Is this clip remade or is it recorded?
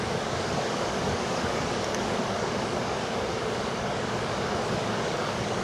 remade